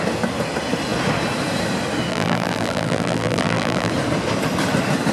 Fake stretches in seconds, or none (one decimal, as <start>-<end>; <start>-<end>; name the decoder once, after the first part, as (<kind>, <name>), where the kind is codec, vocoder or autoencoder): 2.1-3.9 (vocoder, BigVGAN v2)